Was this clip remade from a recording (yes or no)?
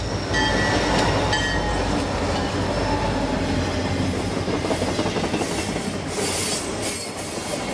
no